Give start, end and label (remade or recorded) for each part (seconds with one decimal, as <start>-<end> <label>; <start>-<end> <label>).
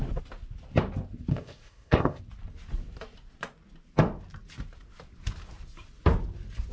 0.0-1.3 recorded; 1.3-2.2 remade; 2.2-6.7 recorded